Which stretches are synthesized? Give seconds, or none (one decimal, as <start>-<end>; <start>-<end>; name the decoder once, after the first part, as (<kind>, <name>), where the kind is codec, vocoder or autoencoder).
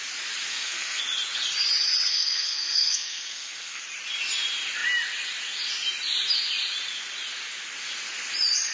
0.5-1.0 (codec, SNAC); 2.1-3.8